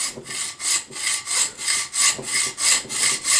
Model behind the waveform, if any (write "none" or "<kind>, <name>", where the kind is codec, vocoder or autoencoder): none